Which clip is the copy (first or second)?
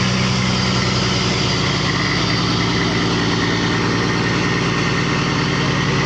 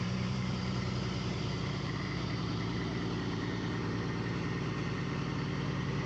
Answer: second